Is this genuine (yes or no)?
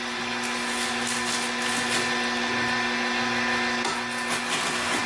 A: yes